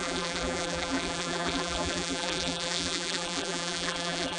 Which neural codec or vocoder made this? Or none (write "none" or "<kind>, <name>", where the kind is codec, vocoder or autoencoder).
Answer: vocoder, BigVGAN v2